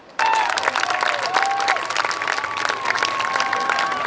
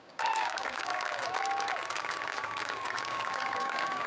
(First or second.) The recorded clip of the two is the first